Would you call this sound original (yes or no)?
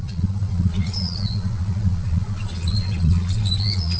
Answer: no